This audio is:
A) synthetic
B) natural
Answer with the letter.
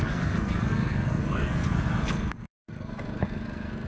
A